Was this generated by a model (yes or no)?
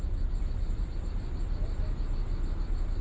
no